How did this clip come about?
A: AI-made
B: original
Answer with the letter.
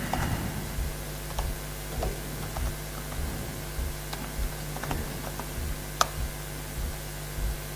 B